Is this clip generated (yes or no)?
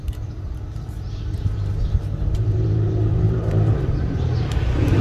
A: yes